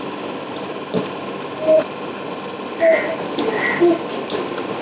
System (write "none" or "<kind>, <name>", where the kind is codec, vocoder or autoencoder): none